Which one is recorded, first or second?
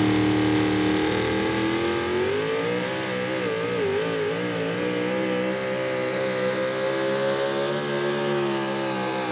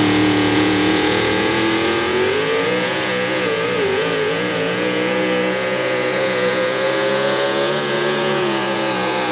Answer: first